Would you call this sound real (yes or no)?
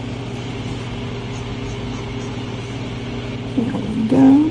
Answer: yes